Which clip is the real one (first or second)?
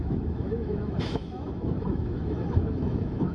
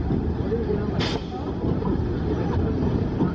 second